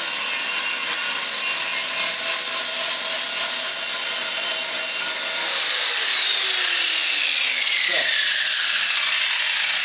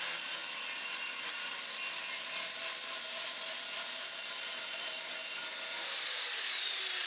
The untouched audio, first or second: first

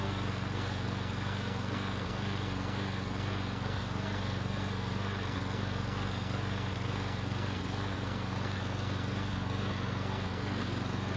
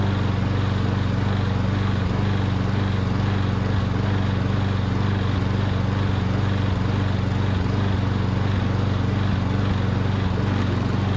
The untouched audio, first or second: second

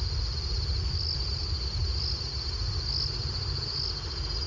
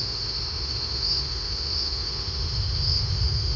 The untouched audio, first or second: first